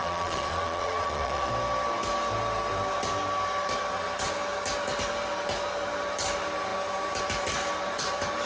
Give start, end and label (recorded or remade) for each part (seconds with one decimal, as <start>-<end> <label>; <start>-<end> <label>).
0.0-1.5 remade; 1.5-8.5 recorded